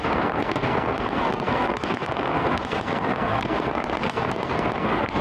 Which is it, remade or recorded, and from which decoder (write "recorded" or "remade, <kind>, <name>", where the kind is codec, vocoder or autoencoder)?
remade, codec, SNAC